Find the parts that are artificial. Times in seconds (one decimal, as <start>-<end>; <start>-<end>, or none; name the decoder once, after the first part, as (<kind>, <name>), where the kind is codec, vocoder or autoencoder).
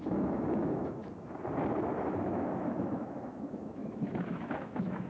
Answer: 0.0-1.0 (autoencoder, DAC-VAE); 2.0-5.1